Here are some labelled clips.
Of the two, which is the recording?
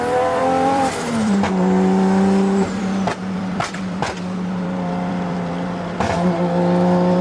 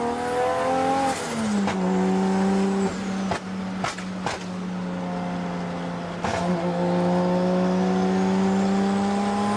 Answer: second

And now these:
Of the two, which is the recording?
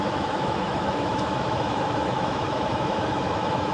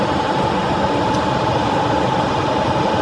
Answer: second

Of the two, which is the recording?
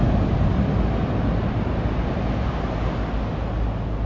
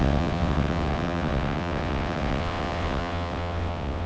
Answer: first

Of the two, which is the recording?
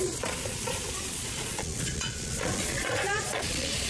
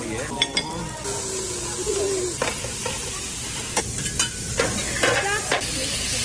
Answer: second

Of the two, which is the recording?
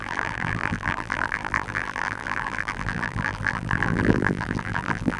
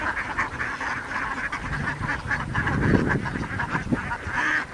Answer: second